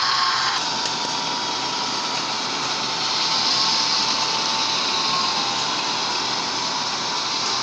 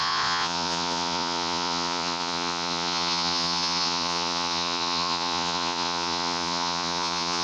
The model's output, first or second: second